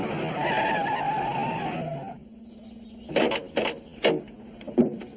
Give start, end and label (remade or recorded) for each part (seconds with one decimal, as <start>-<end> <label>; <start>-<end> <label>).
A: 0.0-5.2 recorded